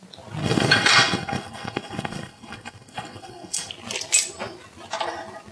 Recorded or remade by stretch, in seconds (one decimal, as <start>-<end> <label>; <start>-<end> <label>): 0.0-0.4 recorded; 0.4-3.7 remade; 3.7-5.5 recorded